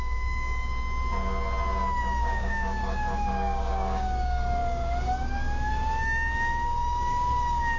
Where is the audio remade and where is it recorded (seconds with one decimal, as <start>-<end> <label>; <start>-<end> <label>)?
0.0-0.7 remade; 0.7-2.0 recorded; 2.0-7.8 remade